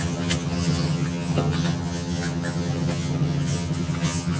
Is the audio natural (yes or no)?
no